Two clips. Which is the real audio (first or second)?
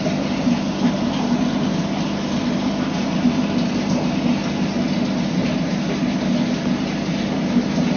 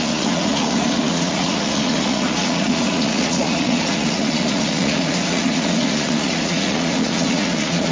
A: first